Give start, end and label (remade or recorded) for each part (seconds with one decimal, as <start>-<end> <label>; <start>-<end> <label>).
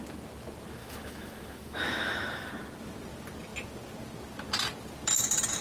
0.0-0.8 recorded; 0.8-2.5 remade; 2.5-5.6 recorded